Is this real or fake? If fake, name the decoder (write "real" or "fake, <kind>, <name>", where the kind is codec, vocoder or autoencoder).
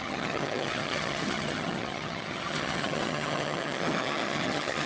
fake, vocoder, HiFi-GAN